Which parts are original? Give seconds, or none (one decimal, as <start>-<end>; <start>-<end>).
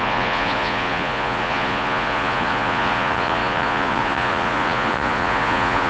none